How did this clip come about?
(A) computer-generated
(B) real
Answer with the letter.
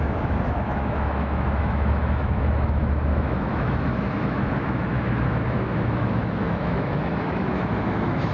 A